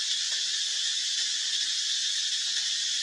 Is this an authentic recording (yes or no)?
yes